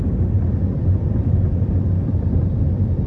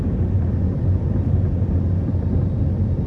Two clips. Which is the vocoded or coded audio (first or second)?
first